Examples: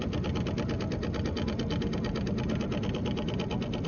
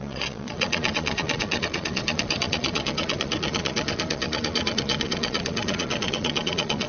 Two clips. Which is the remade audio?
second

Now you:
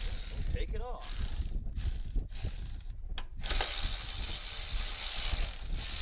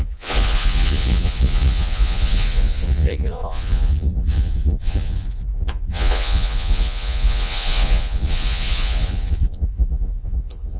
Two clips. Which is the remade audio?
second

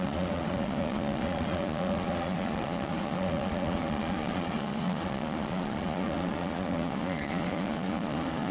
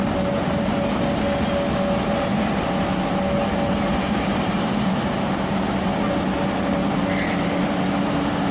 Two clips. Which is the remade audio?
first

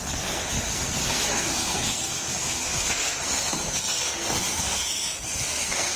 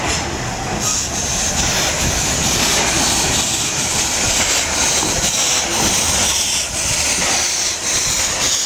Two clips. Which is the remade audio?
first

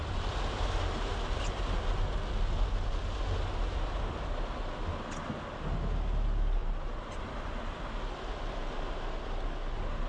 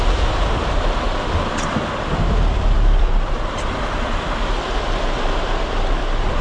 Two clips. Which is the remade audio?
second